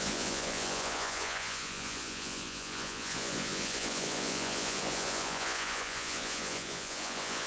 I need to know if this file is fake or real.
fake